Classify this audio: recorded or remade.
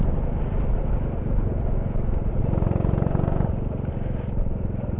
recorded